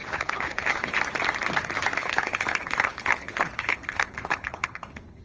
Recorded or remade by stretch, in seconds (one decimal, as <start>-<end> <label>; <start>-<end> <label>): 0.0-1.0 remade; 1.0-2.0 recorded; 2.0-5.2 remade